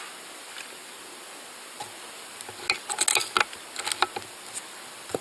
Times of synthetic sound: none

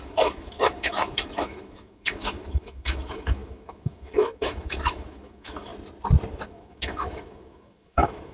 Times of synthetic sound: 0.0-5.7 (autoencoder, DAC-VAE); 6.3-8.3

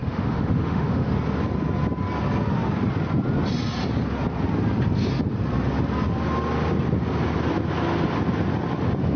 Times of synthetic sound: 0.0-1.1 (autoencoder, DAC-VAE)

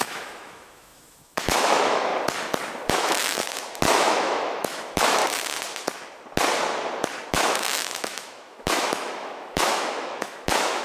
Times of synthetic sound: 0.0-2.1 (autoencoder, DAC-VAE); 2.9-3.4; 3.9-5.2; 7.3-10.8

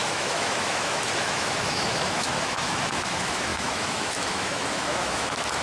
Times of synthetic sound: 0.0-5.6 (autoencoder, DAC-VAE)

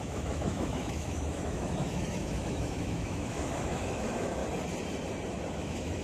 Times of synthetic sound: 0.0-4.4 (autoencoder, DAC-VAE); 5.6-6.0

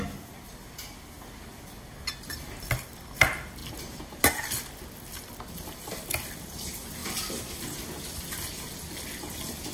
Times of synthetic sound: none

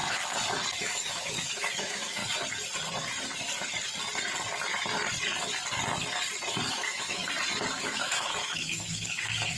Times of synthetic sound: 0.8-2.2 (autoencoder, DAC-VAE); 6.7-7.2; 7.8-9.6